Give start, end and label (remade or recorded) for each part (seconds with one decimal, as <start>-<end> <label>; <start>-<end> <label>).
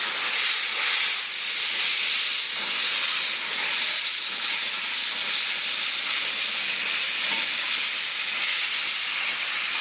0.0-4.1 recorded; 4.1-5.0 remade; 5.0-8.1 recorded; 8.1-8.6 remade; 8.6-9.8 recorded